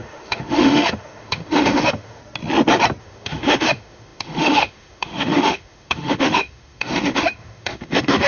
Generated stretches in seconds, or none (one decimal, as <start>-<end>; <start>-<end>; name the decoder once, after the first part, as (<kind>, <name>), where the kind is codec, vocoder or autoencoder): 0.0-2.2 (autoencoder, DAC-VAE); 3.0-8.3